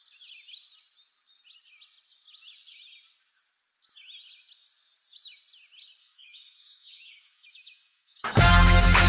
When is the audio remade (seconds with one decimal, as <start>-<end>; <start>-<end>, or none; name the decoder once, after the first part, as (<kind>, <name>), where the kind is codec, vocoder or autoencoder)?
6.0-9.1 (autoencoder, DAC-VAE)